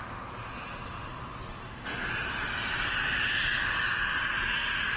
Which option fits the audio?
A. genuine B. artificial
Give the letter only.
A